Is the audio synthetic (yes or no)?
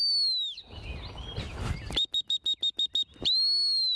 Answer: no